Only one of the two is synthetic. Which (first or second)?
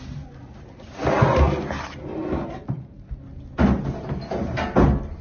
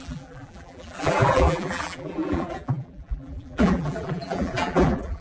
second